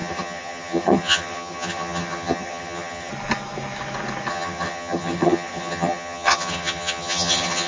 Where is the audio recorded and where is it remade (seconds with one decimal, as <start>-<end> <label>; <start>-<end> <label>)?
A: 0.0-3.1 remade; 3.1-4.3 recorded; 4.3-7.7 remade